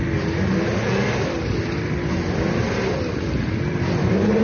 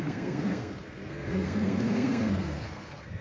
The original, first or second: first